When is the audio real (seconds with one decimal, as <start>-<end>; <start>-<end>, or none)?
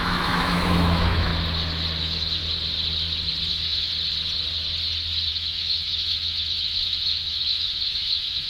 1.3-2.0; 2.4-3.5; 3.9-5.3